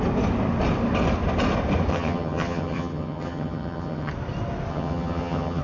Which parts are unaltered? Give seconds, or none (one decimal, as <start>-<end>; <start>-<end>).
0.0-1.9; 4.1-4.7